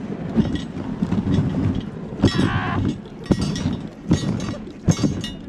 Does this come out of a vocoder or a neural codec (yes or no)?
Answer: no